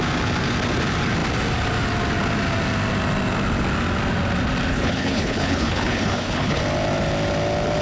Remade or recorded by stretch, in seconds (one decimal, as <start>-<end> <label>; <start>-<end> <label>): 0.0-4.7 recorded; 4.7-6.6 remade; 6.6-7.8 recorded